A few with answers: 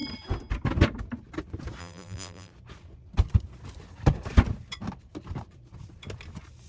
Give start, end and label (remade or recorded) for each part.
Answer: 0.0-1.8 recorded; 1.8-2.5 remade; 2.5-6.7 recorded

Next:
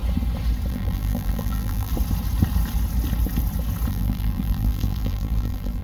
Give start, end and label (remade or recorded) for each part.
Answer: 0.0-0.7 recorded; 0.7-1.9 remade; 1.9-3.9 recorded; 3.9-5.8 remade

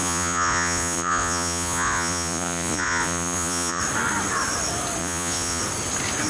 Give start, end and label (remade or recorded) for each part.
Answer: 0.0-3.8 remade; 3.8-5.0 recorded; 5.0-5.6 remade; 5.6-6.3 recorded

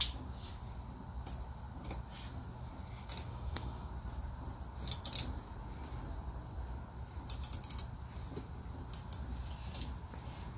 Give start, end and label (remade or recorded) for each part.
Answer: 0.0-3.3 recorded; 3.3-3.9 remade; 3.9-10.6 recorded

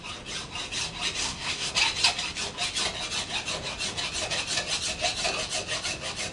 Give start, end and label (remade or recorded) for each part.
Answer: 0.0-1.2 recorded; 1.2-1.7 remade; 1.7-6.3 recorded

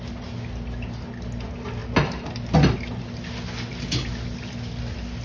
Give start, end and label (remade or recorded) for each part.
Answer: 0.0-5.2 recorded

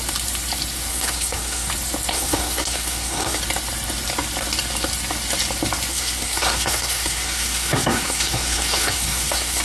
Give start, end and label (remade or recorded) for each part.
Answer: 0.0-0.9 recorded; 0.9-1.7 remade; 1.7-2.1 recorded; 2.1-3.4 remade; 3.4-5.9 recorded; 5.9-9.6 remade

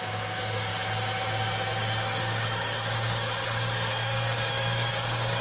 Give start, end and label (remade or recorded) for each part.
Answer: 0.0-0.7 remade; 0.7-2.2 recorded; 2.2-5.4 remade